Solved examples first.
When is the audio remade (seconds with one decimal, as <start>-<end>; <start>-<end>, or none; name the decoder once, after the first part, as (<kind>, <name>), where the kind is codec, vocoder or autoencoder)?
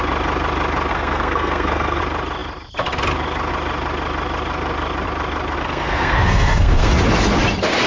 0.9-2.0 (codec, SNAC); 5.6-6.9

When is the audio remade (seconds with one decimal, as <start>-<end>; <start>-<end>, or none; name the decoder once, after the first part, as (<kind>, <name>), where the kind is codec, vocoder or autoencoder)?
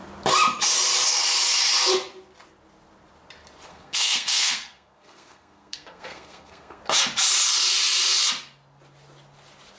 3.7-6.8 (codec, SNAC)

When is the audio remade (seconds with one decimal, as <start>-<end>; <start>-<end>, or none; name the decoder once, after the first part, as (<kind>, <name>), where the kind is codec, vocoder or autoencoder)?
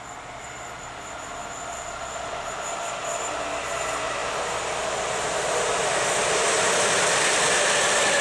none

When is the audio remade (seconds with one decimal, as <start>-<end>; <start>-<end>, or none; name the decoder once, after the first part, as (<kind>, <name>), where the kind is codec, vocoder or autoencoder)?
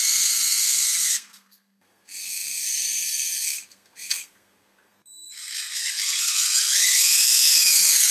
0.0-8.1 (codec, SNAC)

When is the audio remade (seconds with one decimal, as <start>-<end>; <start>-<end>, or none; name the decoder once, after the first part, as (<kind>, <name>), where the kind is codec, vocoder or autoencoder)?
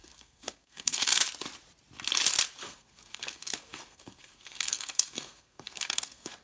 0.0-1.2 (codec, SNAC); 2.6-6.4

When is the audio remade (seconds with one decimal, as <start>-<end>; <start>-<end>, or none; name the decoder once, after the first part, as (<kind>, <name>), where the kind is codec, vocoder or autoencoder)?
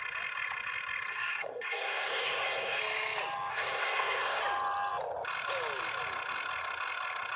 1.1-2.8 (codec, SNAC); 3.5-4.4